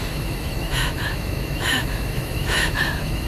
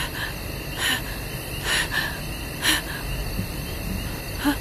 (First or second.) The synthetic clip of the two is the first